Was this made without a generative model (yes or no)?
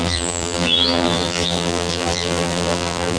no